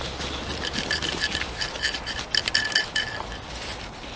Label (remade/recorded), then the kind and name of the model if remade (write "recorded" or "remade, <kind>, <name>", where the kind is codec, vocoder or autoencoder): remade, vocoder, BigVGAN v2